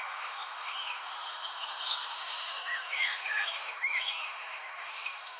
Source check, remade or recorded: remade